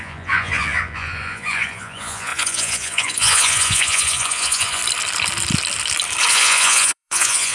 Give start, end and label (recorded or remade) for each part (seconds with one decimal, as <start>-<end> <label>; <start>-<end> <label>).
0.0-4.8 remade; 4.8-6.3 recorded; 6.3-7.5 remade